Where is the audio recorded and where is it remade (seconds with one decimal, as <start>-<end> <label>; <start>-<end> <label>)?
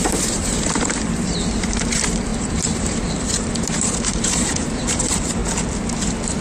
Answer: 0.0-5.4 remade; 5.4-6.4 recorded